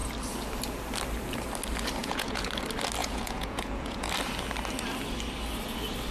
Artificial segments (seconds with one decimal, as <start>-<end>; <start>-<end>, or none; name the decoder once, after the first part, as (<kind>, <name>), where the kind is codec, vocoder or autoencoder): 2.0-2.5 (vocoder, Vocos); 3.0-4.1